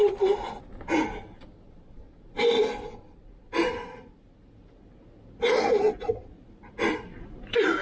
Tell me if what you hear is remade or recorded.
recorded